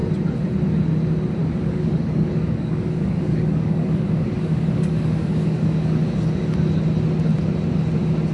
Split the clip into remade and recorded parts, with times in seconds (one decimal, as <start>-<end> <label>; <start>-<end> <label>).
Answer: 0.0-1.4 recorded; 1.4-6.0 remade; 6.0-8.3 recorded